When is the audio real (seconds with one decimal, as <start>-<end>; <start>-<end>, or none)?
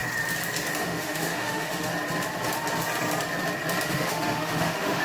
0.0-0.8; 1.9-3.9